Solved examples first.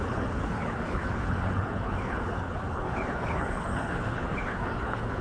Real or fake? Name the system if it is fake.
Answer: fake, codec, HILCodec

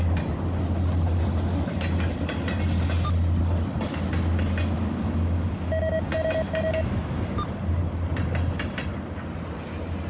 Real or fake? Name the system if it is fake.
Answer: real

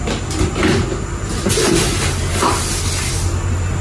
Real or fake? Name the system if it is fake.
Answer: real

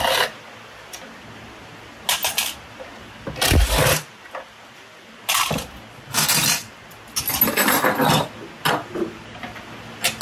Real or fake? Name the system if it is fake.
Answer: real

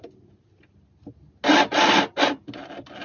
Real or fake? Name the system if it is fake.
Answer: real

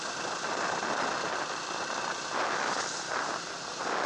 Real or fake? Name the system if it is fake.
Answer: real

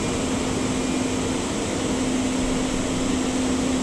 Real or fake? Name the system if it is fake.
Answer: real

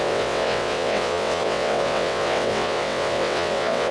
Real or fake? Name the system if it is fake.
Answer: fake, vocoder, WaveNeXt